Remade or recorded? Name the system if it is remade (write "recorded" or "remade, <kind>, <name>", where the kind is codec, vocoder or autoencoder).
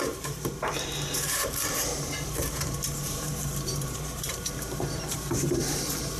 remade, vocoder, BigVGAN v2